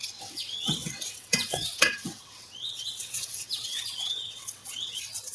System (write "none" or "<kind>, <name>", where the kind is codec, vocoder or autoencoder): vocoder, WaveNeXt